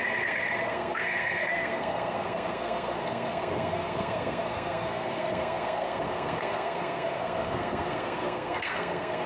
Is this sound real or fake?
fake